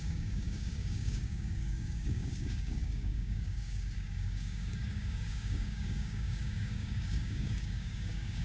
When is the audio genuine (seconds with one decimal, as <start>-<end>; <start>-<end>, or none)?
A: none